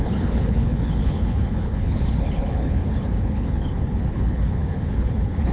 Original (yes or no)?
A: no